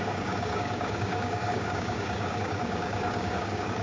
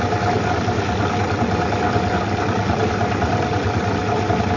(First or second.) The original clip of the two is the second